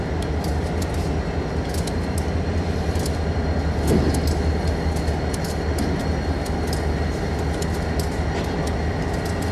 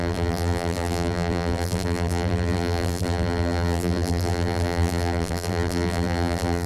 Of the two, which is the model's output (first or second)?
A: second